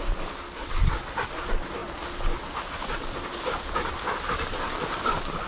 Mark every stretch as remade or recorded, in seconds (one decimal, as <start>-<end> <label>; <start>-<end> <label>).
0.0-5.5 recorded

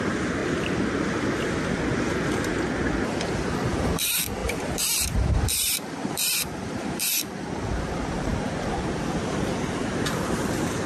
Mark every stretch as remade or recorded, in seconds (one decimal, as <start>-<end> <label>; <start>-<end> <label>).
0.0-0.4 remade; 0.4-3.7 recorded; 3.7-10.9 remade